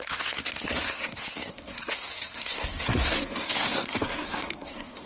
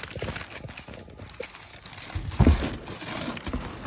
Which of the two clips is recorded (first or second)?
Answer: second